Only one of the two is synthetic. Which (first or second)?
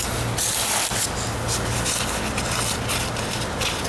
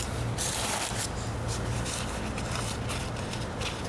second